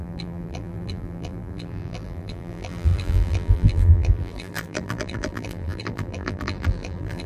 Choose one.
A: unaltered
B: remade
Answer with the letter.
B